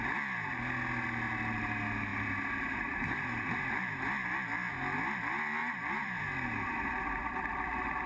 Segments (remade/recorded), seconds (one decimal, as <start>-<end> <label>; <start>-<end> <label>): 0.0-2.1 recorded; 2.1-3.4 remade; 3.4-5.6 recorded; 5.6-6.2 remade; 6.2-8.1 recorded